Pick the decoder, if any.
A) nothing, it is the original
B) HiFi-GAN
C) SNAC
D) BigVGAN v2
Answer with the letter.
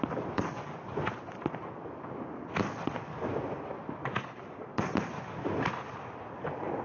A